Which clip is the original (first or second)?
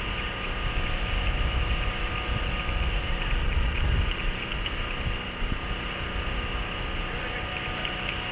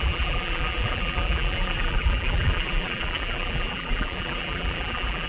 first